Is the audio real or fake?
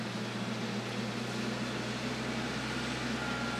real